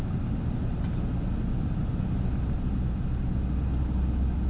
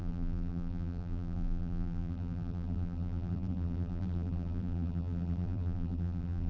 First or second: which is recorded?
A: first